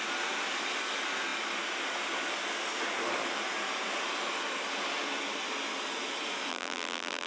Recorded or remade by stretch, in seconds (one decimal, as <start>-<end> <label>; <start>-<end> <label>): 0.0-6.5 recorded; 6.5-7.3 remade